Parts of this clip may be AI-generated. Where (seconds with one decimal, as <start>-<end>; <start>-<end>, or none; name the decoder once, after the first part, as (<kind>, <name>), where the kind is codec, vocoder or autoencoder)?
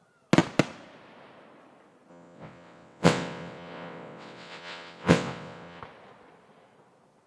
2.1-5.8 (vocoder, WaveNeXt)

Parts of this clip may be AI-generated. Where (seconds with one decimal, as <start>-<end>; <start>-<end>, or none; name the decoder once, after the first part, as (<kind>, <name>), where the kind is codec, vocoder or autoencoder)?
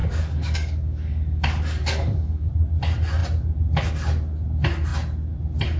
0.0-2.5 (codec, DAC)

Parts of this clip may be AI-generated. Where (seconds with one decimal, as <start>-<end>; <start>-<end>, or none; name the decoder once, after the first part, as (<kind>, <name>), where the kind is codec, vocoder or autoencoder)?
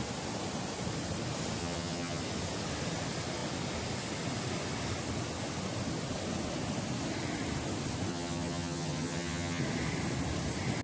1.6-2.2 (vocoder, HiFi-GAN); 8.1-9.6